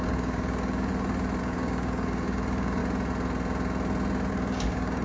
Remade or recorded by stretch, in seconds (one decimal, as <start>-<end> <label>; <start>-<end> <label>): 0.0-0.9 remade; 0.9-1.4 recorded; 1.4-2.8 remade; 2.8-4.3 recorded; 4.3-5.0 remade